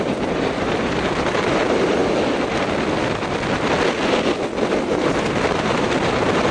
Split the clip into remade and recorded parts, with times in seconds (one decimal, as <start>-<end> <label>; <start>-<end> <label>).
0.0-2.0 remade; 2.0-4.8 recorded; 4.8-6.5 remade